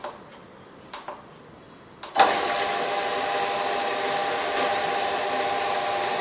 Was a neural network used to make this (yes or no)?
no